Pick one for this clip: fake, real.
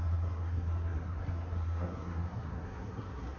fake